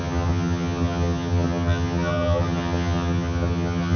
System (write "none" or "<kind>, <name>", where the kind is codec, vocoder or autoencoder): vocoder, HiFi-GAN